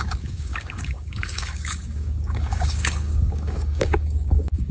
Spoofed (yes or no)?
yes